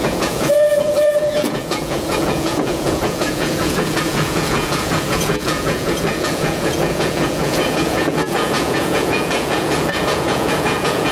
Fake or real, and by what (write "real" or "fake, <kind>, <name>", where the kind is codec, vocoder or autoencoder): fake, vocoder, Vocos